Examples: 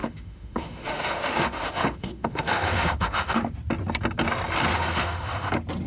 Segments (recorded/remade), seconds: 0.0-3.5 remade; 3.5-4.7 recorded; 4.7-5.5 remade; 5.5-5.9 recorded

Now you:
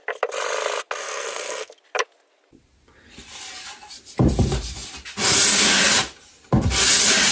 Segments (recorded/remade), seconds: 0.0-1.0 recorded; 1.0-1.7 remade; 1.7-7.3 recorded

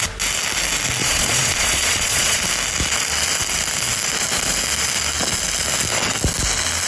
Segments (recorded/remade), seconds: 0.0-1.0 recorded; 1.0-2.4 remade; 2.4-6.9 recorded